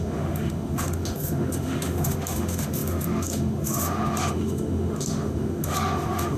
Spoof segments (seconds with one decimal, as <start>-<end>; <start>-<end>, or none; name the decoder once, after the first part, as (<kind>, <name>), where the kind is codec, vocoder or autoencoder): 0.0-6.4 (autoencoder, DAC-VAE)